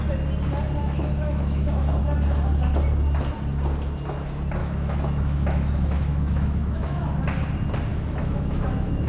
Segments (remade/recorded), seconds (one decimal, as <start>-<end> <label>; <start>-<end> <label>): 0.0-0.8 recorded; 0.8-2.0 remade; 2.0-4.6 recorded; 4.6-7.2 remade; 7.2-7.9 recorded; 7.9-9.1 remade